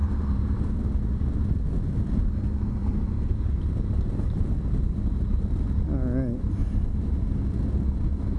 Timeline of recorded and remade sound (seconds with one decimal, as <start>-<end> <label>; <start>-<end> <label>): 0.0-0.7 remade; 0.7-2.8 recorded; 2.8-4.4 remade; 4.4-6.6 recorded; 6.6-7.4 remade; 7.4-8.4 recorded